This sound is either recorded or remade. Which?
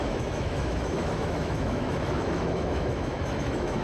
remade